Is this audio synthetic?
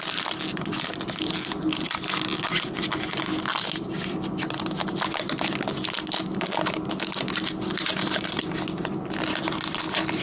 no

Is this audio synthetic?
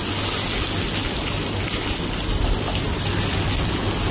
no